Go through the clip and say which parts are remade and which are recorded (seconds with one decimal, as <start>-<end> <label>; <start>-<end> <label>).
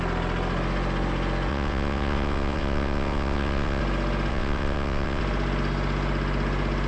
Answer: 0.0-1.5 recorded; 1.5-3.8 remade; 3.8-4.3 recorded; 4.3-5.2 remade; 5.2-6.9 recorded